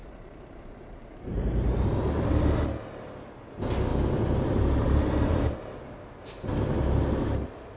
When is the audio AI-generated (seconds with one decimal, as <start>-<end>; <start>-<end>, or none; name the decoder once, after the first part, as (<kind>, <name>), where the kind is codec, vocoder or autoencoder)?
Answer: 0.0-2.4 (vocoder, BigVGAN v2); 3.9-5.8